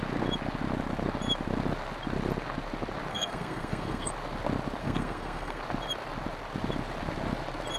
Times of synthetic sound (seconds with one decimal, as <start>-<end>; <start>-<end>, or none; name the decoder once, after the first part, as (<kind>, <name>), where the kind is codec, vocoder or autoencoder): 3.1-4.1 (codec, SNAC); 4.8-5.6